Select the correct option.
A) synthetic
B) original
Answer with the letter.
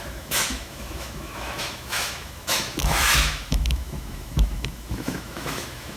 A